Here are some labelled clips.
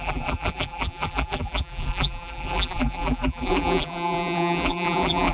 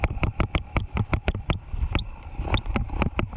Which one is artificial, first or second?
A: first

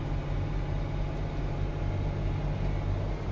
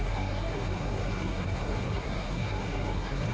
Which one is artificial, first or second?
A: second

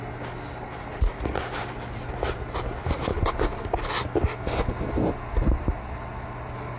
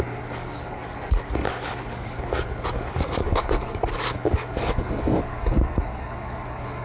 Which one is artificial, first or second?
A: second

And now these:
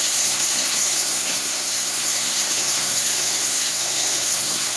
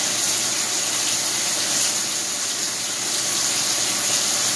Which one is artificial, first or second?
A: first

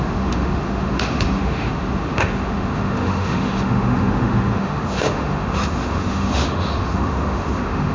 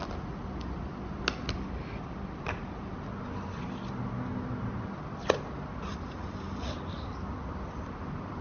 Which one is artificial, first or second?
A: first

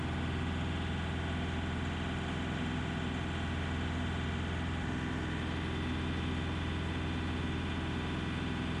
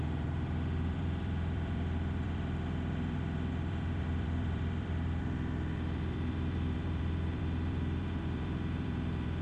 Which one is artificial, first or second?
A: second